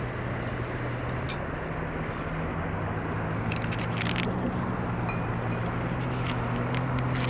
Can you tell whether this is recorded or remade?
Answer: recorded